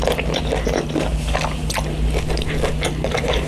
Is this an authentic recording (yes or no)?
yes